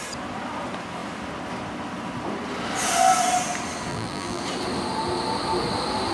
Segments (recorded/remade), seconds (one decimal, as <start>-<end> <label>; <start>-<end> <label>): 0.0-3.9 recorded; 3.9-4.4 remade; 4.4-6.1 recorded